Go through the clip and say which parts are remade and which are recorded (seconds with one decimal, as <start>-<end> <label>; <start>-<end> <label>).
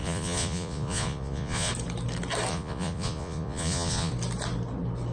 0.0-1.7 remade; 1.7-2.5 recorded; 2.5-4.1 remade; 4.1-5.1 recorded